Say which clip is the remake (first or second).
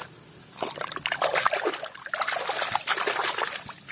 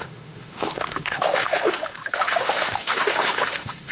second